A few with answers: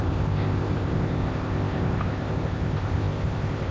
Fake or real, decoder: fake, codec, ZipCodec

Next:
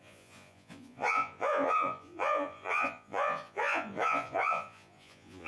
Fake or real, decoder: fake, vocoder, Vocos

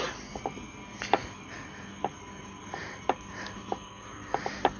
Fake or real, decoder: real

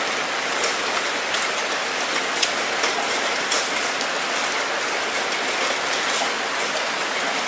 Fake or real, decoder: real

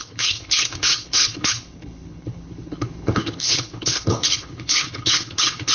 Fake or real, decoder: fake, codec, HILCodec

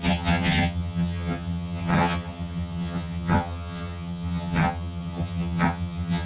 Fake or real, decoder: fake, vocoder, HiFi-GAN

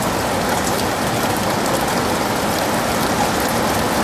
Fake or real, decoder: real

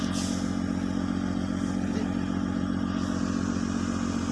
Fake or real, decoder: real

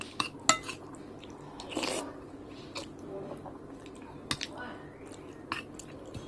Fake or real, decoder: real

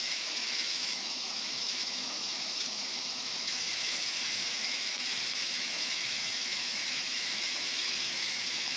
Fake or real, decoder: fake, autoencoder, DAC-VAE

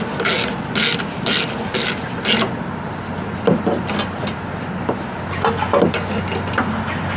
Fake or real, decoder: real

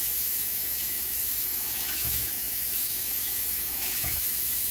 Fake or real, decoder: fake, autoencoder, DAC-VAE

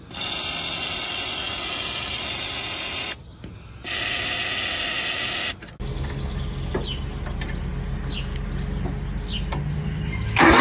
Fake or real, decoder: real